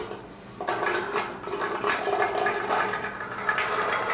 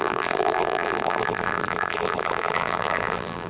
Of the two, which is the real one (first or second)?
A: first